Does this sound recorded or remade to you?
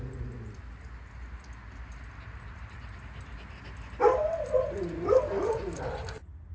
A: recorded